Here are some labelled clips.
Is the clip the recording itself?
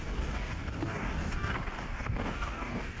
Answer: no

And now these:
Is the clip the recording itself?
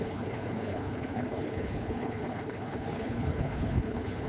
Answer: no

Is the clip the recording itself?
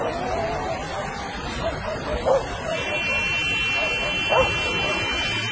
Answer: yes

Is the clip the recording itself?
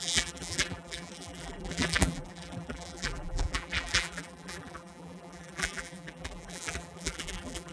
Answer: no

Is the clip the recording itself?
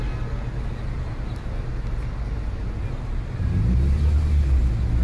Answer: yes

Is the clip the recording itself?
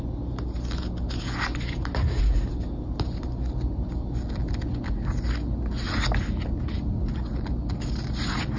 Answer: yes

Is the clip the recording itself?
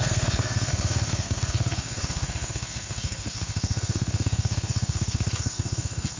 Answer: no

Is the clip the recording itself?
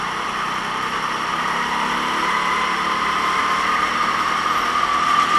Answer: yes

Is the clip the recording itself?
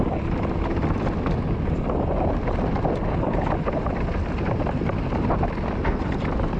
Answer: yes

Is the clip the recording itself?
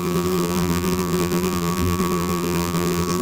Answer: no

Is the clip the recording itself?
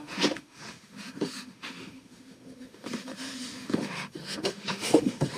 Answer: no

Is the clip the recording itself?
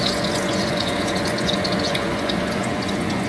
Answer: no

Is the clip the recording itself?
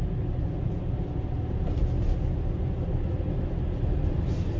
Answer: yes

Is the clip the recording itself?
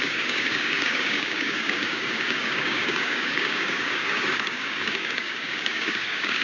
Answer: no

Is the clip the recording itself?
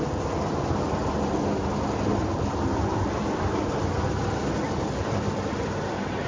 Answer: yes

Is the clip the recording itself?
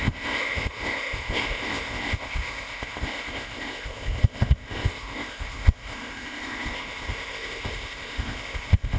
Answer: no